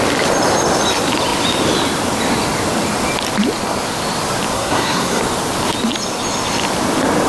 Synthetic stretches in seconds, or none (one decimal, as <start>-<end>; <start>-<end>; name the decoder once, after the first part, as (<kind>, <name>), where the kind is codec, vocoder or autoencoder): 4.5-5.2 (codec, SNAC)